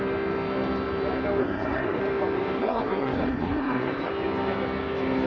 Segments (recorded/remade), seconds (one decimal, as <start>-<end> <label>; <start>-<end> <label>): 0.0-1.4 recorded; 1.4-2.0 remade; 2.0-2.6 recorded; 2.6-4.1 remade; 4.1-5.3 recorded